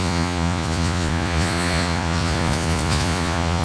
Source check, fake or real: fake